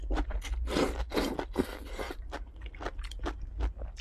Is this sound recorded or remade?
recorded